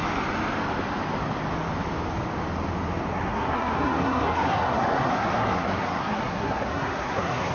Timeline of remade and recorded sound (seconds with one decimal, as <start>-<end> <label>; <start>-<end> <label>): 0.0-3.1 recorded; 3.1-7.5 remade